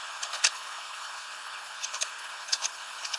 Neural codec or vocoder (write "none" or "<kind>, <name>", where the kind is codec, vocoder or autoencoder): codec, HILCodec